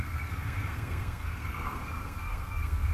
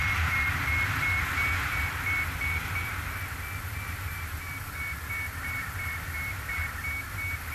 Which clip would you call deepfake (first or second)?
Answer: first